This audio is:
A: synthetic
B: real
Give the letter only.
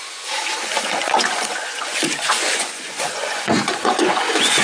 A